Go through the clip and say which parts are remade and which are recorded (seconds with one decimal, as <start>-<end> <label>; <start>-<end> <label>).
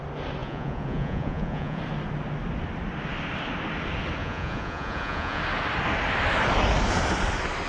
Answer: 0.0-0.4 recorded; 0.4-1.8 remade; 1.8-4.2 recorded; 4.2-5.4 remade; 5.4-7.7 recorded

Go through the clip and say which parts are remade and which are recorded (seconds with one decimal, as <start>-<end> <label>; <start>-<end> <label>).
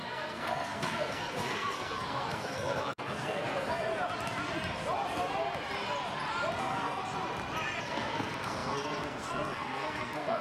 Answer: 0.0-3.9 remade; 3.9-6.6 recorded; 6.6-7.0 remade; 7.0-7.8 recorded; 7.8-10.4 remade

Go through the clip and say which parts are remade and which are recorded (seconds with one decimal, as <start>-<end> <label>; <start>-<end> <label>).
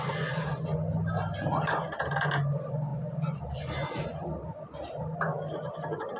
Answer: 0.0-6.2 recorded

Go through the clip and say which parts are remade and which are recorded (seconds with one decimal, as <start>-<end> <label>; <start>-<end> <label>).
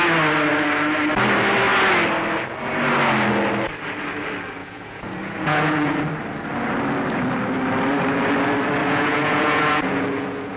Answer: 0.0-4.6 recorded; 4.6-6.0 remade; 6.0-8.8 recorded; 8.8-10.6 remade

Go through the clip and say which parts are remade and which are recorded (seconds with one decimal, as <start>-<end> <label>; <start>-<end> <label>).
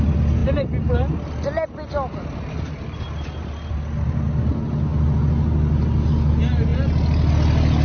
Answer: 0.0-7.8 recorded